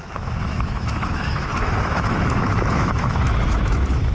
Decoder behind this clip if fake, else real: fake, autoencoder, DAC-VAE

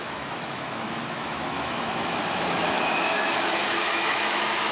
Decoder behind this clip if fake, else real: fake, autoencoder, DAC-VAE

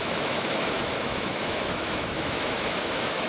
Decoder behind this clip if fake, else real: fake, autoencoder, DAC-VAE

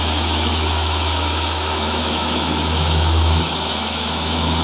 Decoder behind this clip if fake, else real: fake, autoencoder, DAC-VAE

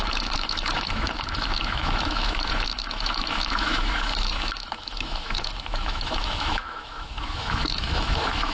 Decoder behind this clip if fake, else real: fake, autoencoder, DAC-VAE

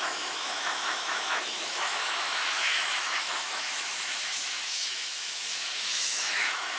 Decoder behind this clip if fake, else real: fake, autoencoder, DAC-VAE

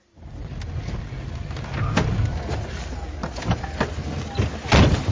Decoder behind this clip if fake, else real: real